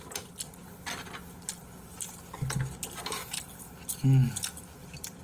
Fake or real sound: real